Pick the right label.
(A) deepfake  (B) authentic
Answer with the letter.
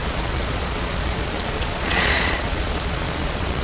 A